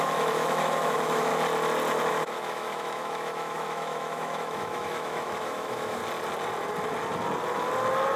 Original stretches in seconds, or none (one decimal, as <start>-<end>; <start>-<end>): 1.3-2.1; 6.0-8.2